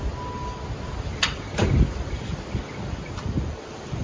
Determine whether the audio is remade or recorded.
recorded